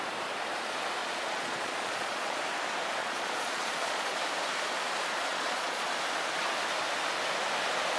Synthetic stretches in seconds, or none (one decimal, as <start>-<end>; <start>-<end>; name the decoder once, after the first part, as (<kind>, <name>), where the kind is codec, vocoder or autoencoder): 1.0-2.4 (vocoder, Vocos); 3.0-4.2; 5.3-5.9